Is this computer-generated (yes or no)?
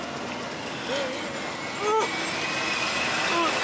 no